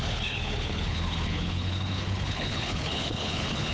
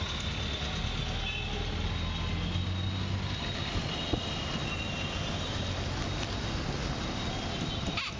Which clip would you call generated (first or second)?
first